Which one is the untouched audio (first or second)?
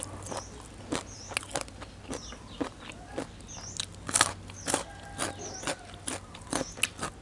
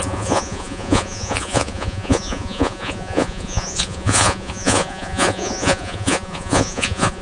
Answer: first